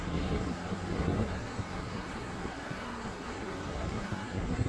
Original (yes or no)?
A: no